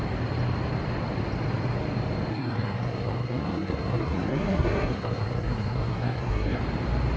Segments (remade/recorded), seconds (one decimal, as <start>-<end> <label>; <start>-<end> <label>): 0.0-2.3 recorded; 2.3-6.6 remade; 6.6-7.2 recorded